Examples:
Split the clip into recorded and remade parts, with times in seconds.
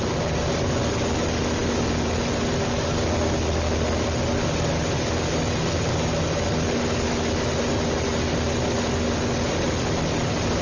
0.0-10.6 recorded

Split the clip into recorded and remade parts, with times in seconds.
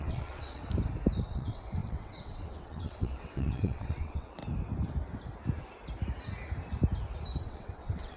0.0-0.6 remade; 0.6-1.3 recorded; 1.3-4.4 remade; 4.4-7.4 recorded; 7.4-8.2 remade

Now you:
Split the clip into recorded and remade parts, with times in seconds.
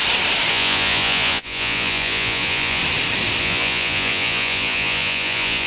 0.0-0.5 recorded; 0.5-2.8 remade; 2.8-3.4 recorded; 3.4-5.7 remade